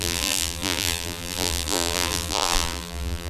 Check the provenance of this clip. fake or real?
fake